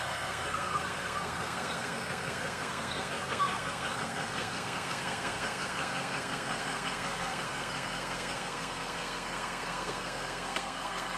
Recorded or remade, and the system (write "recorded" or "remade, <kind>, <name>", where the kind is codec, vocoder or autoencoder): remade, codec, SNAC